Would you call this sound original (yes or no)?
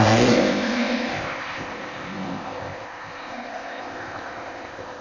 no